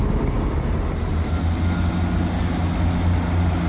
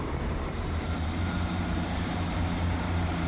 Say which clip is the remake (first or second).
second